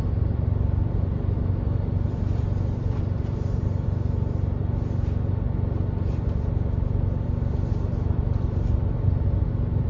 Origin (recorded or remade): recorded